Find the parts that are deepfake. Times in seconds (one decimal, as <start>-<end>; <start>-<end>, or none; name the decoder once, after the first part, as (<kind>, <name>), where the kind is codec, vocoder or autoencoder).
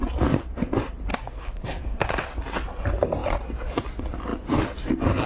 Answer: 1.1-2.1 (codec, SNAC)